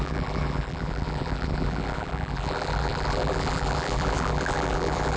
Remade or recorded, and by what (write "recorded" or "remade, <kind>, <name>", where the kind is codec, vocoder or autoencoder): remade, vocoder, BigVGAN v2